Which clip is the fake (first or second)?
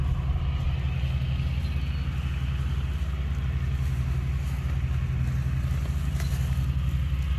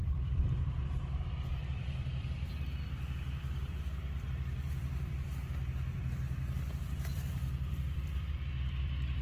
second